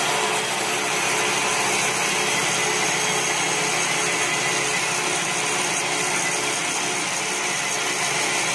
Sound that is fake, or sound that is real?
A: real